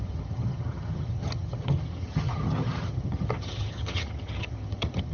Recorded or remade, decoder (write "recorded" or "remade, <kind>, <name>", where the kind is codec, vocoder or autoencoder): remade, vocoder, HiFi-GAN